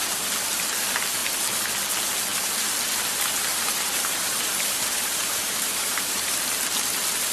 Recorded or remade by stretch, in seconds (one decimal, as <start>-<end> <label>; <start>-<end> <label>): 0.0-3.5 recorded; 3.5-6.3 remade; 6.3-7.3 recorded